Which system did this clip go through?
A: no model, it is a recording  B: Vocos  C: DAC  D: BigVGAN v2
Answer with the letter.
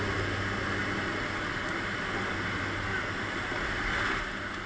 A